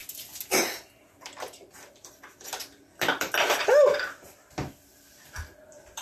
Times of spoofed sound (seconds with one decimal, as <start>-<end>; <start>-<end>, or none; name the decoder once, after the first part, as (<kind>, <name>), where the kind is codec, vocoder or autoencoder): 1.0-6.0 (vocoder, BigVGAN v2)

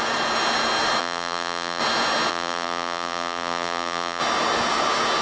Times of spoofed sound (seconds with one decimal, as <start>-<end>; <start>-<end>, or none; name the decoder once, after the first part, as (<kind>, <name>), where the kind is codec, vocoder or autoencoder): 1.0-1.8 (vocoder, BigVGAN v2); 2.3-4.2

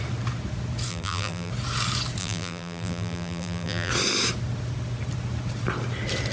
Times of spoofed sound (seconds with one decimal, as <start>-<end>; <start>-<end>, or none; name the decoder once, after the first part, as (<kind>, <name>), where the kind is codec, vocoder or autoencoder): 0.9-1.5 (vocoder, BigVGAN v2); 2.2-3.9

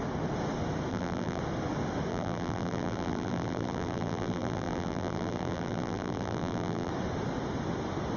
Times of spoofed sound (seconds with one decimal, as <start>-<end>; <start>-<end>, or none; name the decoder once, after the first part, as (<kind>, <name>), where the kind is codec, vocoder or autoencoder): 0.9-1.4 (vocoder, BigVGAN v2); 2.1-6.9

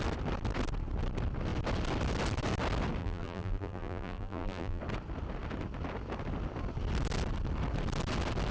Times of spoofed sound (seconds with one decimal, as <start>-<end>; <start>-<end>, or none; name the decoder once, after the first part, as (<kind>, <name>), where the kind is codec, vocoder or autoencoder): 3.0-4.8 (vocoder, BigVGAN v2)

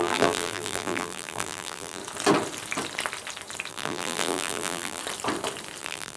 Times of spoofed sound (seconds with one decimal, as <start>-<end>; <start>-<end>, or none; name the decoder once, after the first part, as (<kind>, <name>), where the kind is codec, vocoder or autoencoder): 0.0-2.0 (vocoder, BigVGAN v2); 3.7-5.0; 5.8-6.2

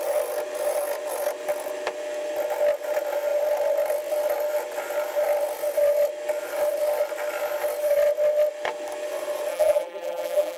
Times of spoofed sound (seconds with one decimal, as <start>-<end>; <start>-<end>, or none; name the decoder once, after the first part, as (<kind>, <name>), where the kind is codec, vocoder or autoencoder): 9.5-10.6 (vocoder, BigVGAN v2)